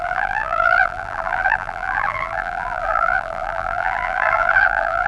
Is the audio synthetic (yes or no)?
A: yes